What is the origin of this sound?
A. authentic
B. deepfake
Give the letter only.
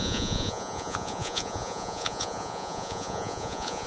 B